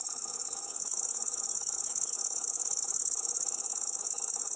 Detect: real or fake fake